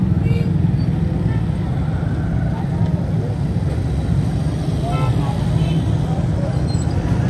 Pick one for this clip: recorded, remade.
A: recorded